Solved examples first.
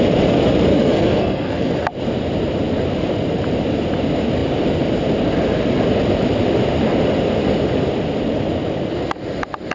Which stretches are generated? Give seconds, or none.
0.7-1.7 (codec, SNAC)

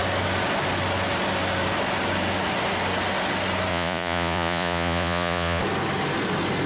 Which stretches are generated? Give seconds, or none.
3.7-5.6 (vocoder, Vocos)

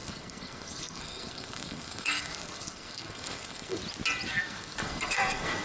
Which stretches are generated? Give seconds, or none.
0.0-3.8 (codec, SNAC); 4.3-5.6